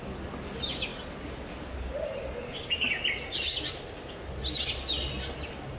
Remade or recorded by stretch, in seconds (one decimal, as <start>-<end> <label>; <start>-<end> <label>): 0.0-5.8 recorded